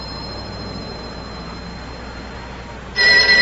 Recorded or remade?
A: recorded